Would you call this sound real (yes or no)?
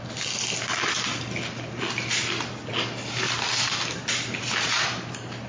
yes